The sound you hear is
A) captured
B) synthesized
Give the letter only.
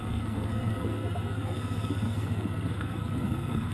B